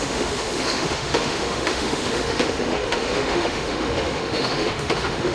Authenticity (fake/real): fake